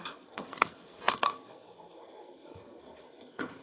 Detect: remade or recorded remade